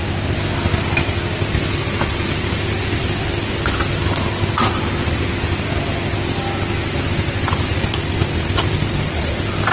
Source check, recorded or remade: recorded